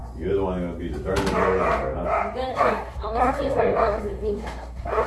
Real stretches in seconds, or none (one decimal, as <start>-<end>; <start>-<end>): 0.0-2.5